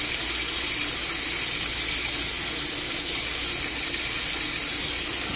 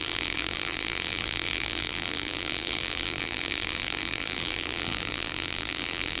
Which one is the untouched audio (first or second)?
first